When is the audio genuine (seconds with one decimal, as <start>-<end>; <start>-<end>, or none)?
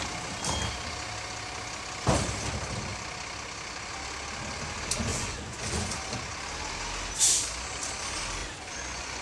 0.0-5.1; 5.9-8.4